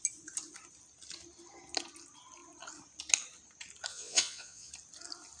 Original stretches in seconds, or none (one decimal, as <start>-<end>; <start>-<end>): 0.0-3.9; 4.7-5.4